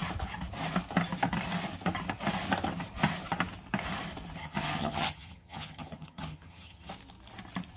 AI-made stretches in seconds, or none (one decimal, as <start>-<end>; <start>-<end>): 4.4-6.9